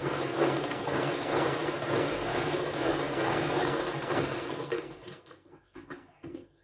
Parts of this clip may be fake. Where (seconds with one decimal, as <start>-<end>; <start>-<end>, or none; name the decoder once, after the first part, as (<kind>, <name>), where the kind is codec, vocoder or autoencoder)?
0.0-6.6 (codec, SNAC)